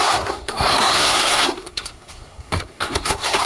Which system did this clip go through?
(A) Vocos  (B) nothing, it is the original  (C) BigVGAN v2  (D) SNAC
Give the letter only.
D